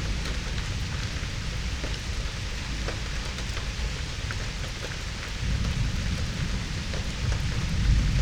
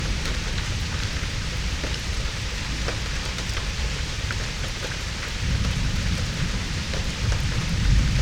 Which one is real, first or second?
first